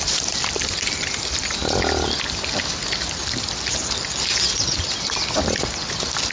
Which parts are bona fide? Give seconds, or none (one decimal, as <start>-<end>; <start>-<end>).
0.0-6.3